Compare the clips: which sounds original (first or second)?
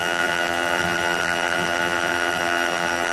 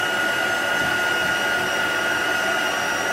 second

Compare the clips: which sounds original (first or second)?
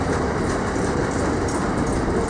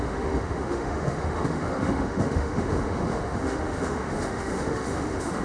first